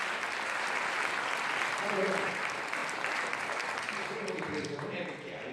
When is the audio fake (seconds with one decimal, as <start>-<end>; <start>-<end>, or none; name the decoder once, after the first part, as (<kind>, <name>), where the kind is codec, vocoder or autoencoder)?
none